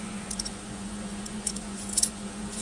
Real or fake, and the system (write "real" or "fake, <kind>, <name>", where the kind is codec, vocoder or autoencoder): fake, vocoder, Vocos